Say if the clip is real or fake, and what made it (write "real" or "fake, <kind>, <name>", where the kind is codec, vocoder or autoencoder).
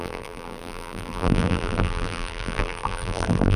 fake, vocoder, BigVGAN v2